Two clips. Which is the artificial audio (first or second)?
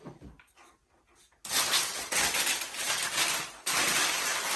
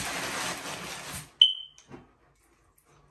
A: first